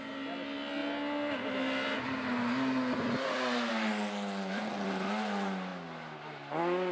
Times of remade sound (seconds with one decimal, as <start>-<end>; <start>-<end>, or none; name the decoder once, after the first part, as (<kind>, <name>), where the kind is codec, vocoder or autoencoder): none